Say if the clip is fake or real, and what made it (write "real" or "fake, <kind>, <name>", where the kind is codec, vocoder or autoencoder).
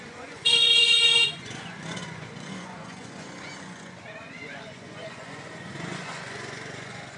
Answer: fake, vocoder, Vocos